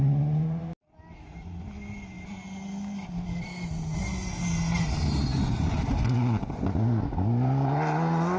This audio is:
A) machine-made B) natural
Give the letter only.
B